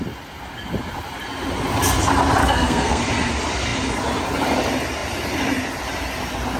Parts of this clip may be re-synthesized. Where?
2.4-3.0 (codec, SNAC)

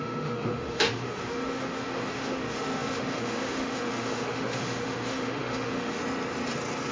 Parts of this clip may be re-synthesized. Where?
0.0-6.0 (autoencoder, DAC-VAE)

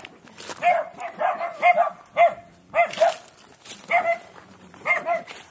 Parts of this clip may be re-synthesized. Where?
0.9-1.7 (vocoder, BigVGAN v2); 4.1-5.5

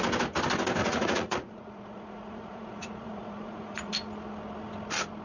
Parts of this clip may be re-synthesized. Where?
0.8-3.9 (vocoder, Vocos)

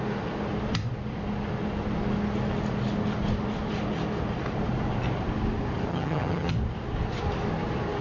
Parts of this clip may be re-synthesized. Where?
5.9-6.5 (vocoder, HiFi-GAN)

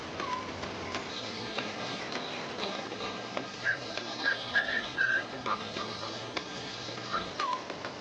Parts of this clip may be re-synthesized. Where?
1.1-2.0 (codec, SNAC); 2.6-7.3

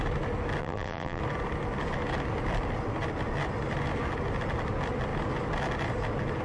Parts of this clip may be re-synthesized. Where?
0.6-1.2 (vocoder, BigVGAN v2)